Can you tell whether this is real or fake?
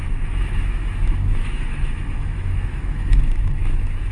fake